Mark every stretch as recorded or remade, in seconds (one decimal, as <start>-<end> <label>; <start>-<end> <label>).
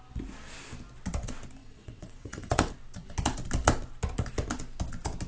0.0-1.6 recorded; 1.6-2.7 remade; 2.7-5.3 recorded